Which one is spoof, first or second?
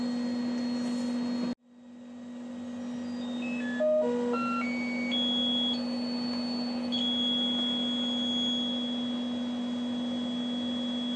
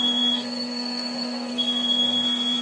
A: second